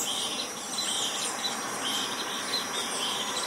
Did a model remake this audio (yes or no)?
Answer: yes